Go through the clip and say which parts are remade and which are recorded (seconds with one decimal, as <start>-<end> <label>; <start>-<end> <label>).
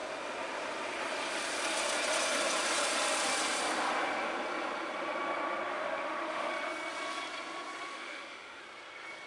0.0-5.7 recorded; 5.7-6.5 remade; 6.5-7.9 recorded; 7.9-8.6 remade; 8.6-9.3 recorded